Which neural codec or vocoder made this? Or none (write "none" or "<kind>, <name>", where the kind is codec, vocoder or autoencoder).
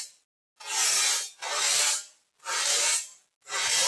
none